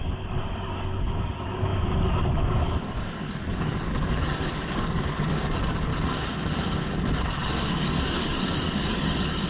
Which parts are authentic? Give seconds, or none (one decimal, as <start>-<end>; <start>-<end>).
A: 5.9-7.3